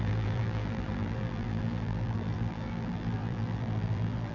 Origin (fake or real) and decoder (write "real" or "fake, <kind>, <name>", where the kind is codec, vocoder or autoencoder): fake, vocoder, BigVGAN v2